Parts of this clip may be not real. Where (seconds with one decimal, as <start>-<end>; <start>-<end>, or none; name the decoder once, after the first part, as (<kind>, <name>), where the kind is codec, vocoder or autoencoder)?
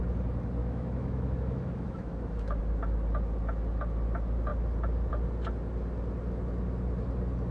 0.6-2.6 (autoencoder, DAC-VAE)